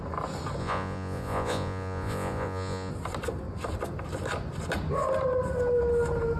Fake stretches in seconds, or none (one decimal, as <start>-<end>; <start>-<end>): 0.6-2.9